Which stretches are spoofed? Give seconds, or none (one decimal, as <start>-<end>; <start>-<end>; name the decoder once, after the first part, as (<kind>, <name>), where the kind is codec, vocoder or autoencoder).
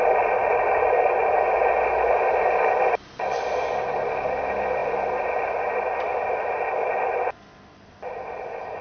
none